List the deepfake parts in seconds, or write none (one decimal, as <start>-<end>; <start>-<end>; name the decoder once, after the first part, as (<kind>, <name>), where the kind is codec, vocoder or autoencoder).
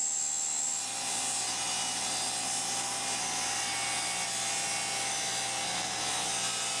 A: none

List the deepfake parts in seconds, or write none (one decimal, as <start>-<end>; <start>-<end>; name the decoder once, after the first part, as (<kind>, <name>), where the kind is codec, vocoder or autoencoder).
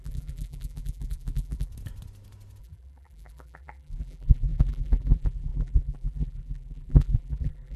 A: 0.0-1.7 (vocoder, BigVGAN v2); 2.6-7.8